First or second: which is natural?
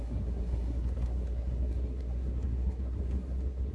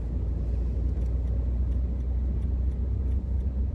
second